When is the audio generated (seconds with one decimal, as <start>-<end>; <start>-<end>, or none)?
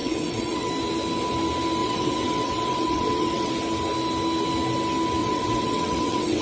0.0-0.7; 1.8-3.5; 5.2-6.4